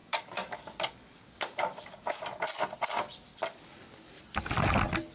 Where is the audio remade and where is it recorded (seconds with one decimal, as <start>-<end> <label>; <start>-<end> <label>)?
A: 0.0-2.2 remade; 2.2-3.3 recorded; 3.3-4.2 remade; 4.2-5.1 recorded